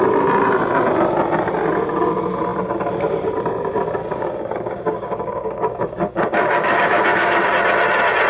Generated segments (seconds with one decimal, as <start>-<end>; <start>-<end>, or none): 4.0-7.5